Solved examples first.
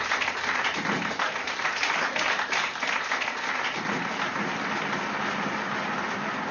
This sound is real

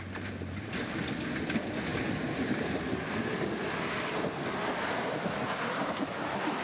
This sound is real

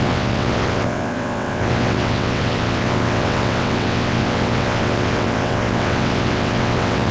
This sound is fake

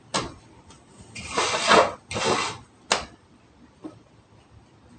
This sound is real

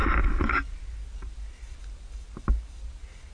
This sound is real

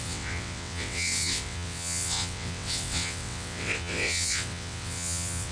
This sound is fake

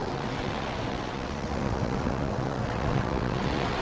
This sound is fake